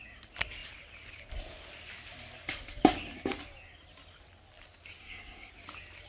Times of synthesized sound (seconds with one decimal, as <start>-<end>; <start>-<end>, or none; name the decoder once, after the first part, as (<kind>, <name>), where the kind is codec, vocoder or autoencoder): 5.0-5.5 (codec, SNAC)